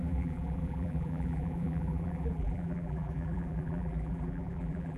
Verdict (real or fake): fake